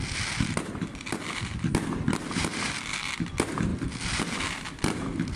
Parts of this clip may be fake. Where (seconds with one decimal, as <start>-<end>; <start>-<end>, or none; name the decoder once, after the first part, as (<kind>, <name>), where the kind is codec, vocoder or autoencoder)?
none

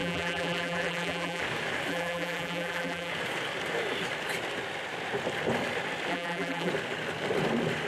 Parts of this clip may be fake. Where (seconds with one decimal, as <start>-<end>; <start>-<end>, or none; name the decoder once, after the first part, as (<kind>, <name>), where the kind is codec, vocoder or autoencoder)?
0.0-1.4 (vocoder, BigVGAN v2); 1.9-3.1; 6.1-6.7

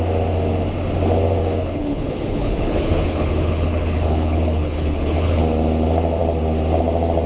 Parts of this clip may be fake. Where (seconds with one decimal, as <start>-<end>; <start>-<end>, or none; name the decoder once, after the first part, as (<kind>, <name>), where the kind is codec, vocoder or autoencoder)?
1.4-5.4 (codec, HILCodec)

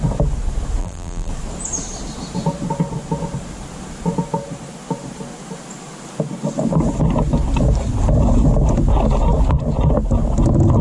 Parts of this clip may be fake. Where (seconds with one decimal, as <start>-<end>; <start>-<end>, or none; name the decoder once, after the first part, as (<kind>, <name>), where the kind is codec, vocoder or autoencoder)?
0.8-1.3 (vocoder, BigVGAN v2)